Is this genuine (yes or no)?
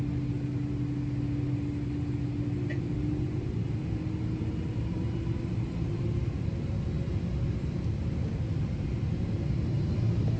yes